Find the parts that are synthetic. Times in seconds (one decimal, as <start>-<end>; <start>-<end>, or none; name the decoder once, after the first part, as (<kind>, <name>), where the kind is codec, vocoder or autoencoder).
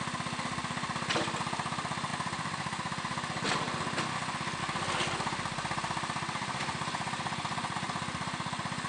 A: none